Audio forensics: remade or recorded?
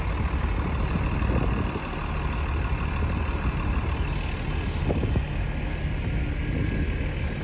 recorded